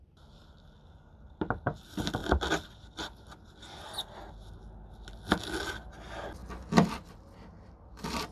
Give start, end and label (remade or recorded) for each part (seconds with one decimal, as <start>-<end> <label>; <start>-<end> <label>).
0.0-8.3 recorded